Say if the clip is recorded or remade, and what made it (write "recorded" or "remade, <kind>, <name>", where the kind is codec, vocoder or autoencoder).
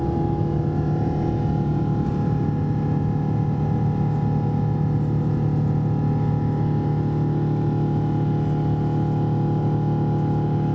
recorded